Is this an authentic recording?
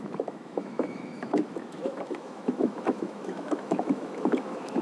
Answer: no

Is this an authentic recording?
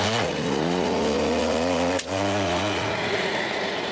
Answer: no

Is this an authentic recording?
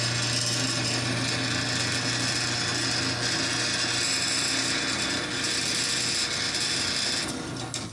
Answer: yes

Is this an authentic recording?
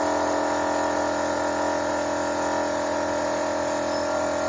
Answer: yes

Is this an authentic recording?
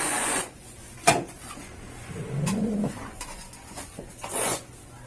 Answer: no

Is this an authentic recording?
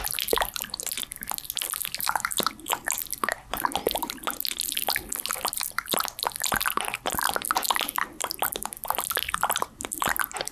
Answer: yes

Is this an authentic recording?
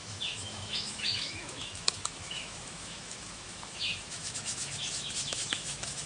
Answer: no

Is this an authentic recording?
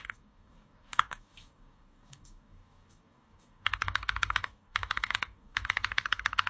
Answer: no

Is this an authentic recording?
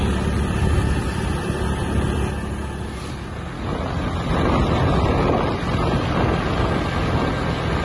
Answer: yes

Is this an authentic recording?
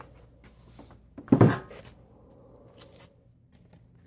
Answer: yes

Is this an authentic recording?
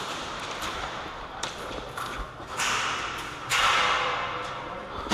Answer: no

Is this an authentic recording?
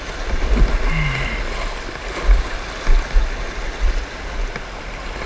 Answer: yes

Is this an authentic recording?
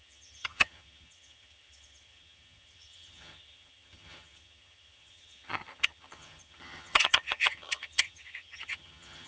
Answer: no